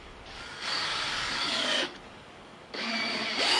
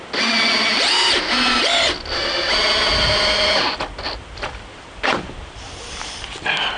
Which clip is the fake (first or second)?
first